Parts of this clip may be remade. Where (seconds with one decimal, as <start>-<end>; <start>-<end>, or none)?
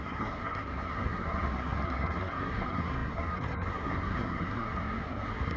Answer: 0.0-5.6